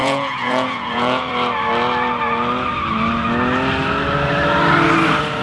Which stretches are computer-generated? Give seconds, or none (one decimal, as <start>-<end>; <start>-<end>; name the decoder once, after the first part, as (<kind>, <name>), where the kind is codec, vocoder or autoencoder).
0.0-1.3 (vocoder, Vocos)